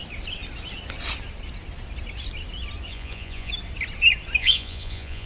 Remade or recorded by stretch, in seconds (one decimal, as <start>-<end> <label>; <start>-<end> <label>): 0.0-2.9 recorded; 2.9-3.5 remade; 3.5-4.4 recorded; 4.4-5.3 remade